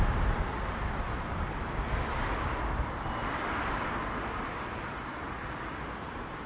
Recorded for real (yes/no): yes